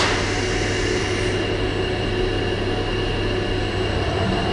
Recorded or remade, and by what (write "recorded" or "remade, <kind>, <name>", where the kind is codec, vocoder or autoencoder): recorded